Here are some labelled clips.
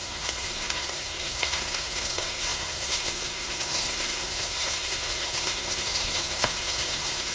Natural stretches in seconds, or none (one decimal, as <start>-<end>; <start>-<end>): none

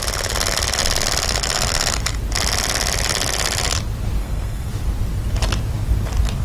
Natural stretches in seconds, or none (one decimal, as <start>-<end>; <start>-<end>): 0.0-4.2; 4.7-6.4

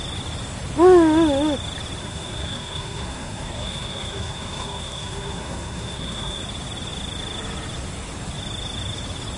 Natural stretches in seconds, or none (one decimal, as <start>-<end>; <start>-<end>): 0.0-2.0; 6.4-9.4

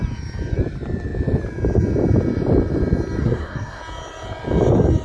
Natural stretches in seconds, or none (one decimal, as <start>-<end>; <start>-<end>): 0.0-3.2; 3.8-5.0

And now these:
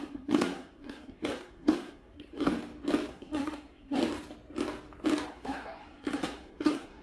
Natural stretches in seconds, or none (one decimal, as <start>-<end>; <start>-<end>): 2.5-3.1; 4.0-5.3

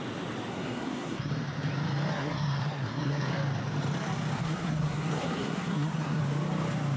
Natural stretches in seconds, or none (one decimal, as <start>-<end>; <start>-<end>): 0.0-0.5; 1.3-2.1; 3.3-4.4; 6.2-7.0

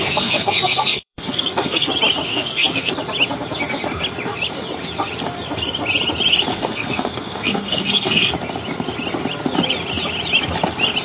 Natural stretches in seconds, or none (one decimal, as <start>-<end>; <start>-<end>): 1.9-2.3; 2.9-6.5; 8.3-11.0

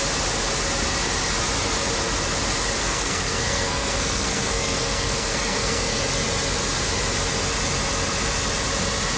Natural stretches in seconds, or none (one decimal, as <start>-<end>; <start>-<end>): 0.0-2.8; 6.0-9.2